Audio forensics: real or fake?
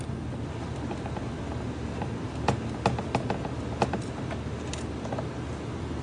real